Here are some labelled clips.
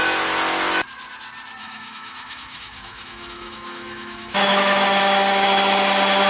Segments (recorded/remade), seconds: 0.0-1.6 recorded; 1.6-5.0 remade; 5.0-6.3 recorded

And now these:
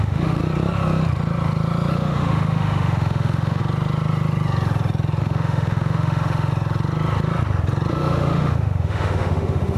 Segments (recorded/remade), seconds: 0.0-0.4 remade; 0.4-1.9 recorded; 1.9-3.6 remade; 3.6-5.2 recorded; 5.2-6.5 remade; 6.5-7.9 recorded; 7.9-9.8 remade

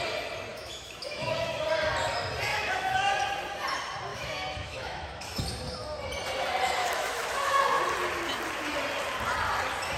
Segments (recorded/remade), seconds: 0.0-0.5 recorded; 0.5-1.5 remade; 1.5-2.5 recorded; 2.5-3.1 remade; 3.1-4.1 recorded; 4.1-5.4 remade; 5.4-6.8 recorded; 6.8-7.8 remade; 7.8-10.0 recorded